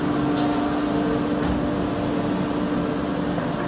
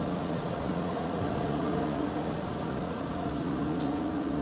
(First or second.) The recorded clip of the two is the first